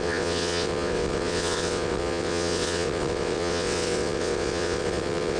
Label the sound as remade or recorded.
remade